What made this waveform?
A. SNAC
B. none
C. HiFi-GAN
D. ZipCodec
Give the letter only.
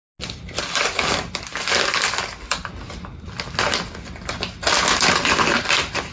B